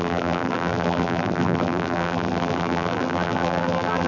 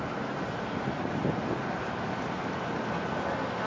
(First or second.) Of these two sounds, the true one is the second